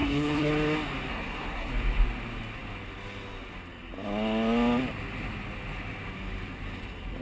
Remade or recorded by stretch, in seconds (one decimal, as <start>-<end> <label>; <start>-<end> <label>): 0.0-0.5 remade; 0.5-1.1 recorded; 1.1-1.7 remade; 1.7-7.2 recorded